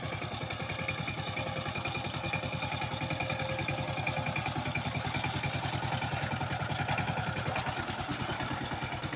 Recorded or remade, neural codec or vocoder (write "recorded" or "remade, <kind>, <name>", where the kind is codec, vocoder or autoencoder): recorded